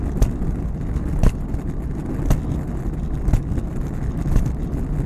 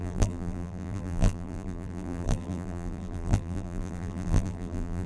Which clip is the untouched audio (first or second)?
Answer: first